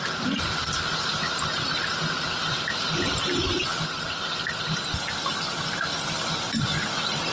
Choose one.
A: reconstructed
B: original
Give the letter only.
B